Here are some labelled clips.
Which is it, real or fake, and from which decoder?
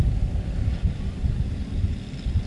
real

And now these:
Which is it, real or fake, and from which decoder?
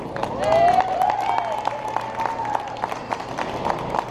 real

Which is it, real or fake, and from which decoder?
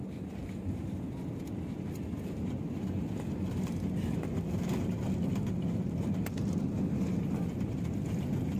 real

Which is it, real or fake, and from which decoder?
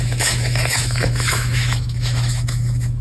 fake, autoencoder, DAC-VAE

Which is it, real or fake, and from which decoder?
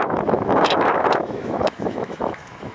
fake, autoencoder, DAC-VAE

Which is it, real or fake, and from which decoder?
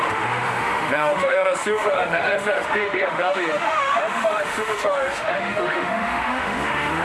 fake, autoencoder, DAC-VAE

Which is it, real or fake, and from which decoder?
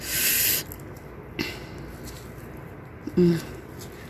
real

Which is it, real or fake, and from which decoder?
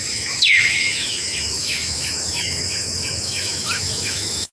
fake, autoencoder, DAC-VAE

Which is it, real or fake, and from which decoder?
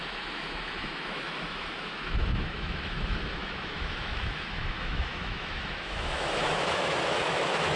fake, autoencoder, DAC-VAE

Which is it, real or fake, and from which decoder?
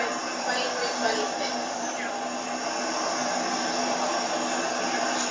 real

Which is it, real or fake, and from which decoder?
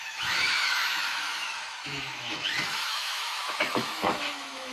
fake, autoencoder, DAC-VAE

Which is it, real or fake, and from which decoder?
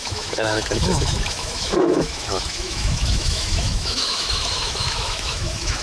fake, autoencoder, DAC-VAE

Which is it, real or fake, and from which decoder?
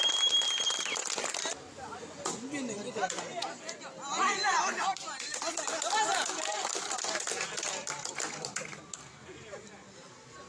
real